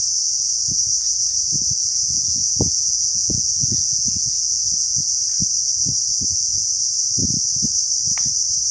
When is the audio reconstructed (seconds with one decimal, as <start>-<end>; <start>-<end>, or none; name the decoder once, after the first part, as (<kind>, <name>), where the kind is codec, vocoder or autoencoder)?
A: 1.8-5.2 (vocoder, Vocos); 6.1-6.7